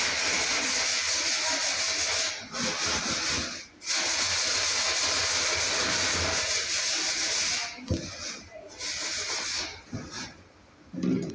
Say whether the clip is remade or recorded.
recorded